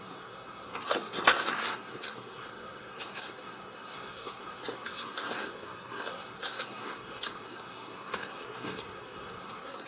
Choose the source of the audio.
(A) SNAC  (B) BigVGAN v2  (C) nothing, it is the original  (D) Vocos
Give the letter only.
A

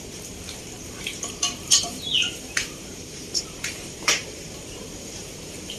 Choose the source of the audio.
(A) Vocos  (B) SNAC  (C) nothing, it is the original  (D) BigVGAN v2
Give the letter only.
D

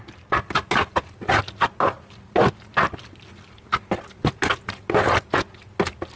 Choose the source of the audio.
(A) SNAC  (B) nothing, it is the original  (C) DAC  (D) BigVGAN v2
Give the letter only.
B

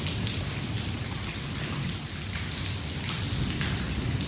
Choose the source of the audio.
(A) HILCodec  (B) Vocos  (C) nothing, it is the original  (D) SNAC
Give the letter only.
C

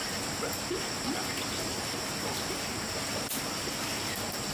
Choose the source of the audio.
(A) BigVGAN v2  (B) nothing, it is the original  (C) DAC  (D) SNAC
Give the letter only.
B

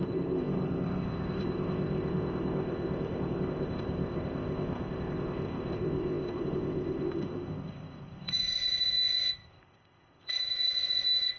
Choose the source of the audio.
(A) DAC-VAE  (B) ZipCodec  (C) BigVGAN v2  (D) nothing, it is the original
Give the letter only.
B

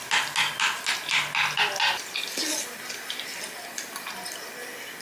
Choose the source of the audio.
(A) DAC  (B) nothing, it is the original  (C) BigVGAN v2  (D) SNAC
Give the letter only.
B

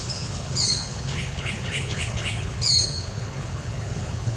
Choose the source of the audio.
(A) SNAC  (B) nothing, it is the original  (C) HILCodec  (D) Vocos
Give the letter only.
C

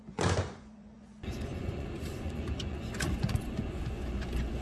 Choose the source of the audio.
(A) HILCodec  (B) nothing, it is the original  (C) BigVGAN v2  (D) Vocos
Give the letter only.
D